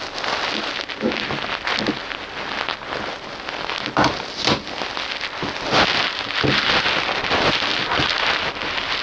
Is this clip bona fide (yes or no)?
yes